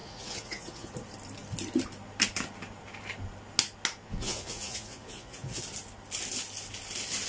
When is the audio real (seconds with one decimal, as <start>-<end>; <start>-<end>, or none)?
0.9-4.0; 5.6-7.3